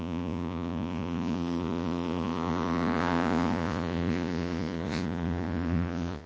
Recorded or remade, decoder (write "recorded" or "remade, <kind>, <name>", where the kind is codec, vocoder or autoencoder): remade, vocoder, Vocos